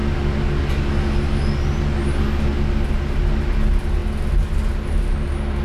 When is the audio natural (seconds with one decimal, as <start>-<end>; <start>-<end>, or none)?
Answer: 0.0-5.6